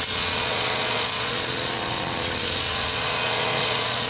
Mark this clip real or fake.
fake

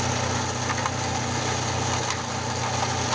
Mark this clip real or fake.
real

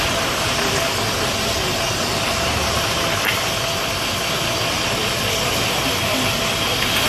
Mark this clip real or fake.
real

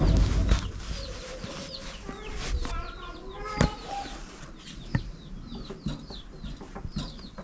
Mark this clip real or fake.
real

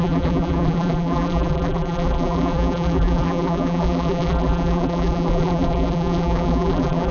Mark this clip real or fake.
fake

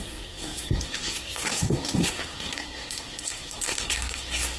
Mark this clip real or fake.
fake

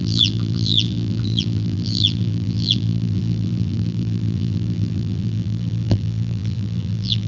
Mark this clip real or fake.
fake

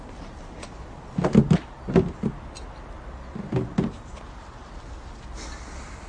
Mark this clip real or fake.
real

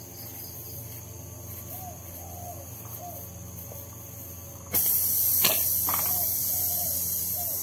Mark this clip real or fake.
real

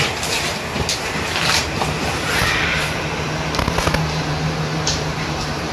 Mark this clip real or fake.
fake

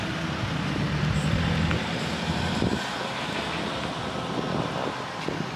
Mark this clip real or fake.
real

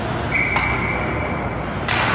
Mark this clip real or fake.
real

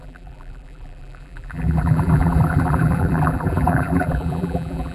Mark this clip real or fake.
fake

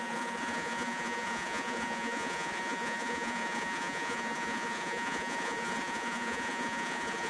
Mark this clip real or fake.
fake